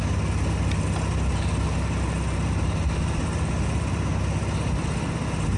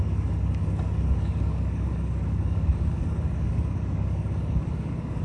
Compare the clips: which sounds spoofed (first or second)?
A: second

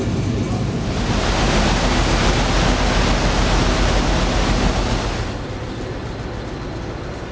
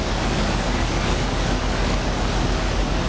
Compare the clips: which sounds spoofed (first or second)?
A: second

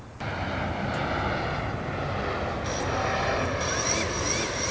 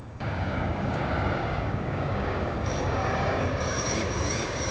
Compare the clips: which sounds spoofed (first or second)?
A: second